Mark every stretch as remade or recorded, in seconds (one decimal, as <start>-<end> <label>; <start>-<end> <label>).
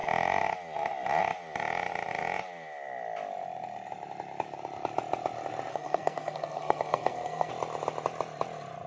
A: 0.0-5.7 recorded; 5.7-7.5 remade; 7.5-8.9 recorded